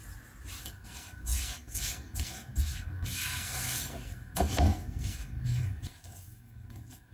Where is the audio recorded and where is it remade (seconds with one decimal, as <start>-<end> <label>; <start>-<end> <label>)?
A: 0.0-0.6 recorded; 0.6-7.1 remade